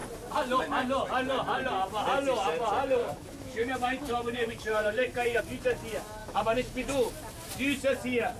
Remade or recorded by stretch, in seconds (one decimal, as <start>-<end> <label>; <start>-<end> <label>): 0.0-3.0 recorded; 3.0-5.4 remade; 5.4-6.2 recorded; 6.2-7.1 remade; 7.1-8.4 recorded